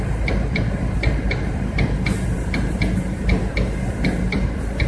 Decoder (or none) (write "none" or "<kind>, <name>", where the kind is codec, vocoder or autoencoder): vocoder, BigVGAN v2